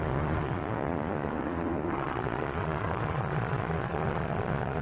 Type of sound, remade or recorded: remade